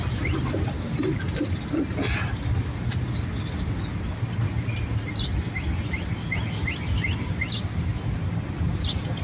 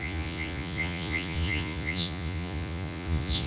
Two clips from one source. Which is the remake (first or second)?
second